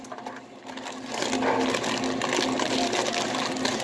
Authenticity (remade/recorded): recorded